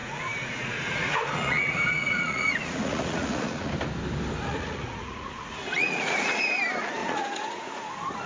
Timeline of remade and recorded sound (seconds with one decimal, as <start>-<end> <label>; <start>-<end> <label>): 0.0-3.7 remade; 3.7-4.5 recorded; 4.5-6.5 remade; 6.5-7.0 recorded; 7.0-7.9 remade; 7.9-8.3 recorded